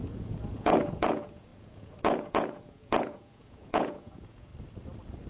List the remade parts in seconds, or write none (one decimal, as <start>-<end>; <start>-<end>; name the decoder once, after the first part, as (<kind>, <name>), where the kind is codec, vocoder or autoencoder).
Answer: 0.0-4.5 (vocoder, Vocos)